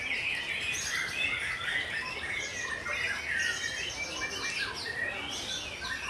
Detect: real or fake real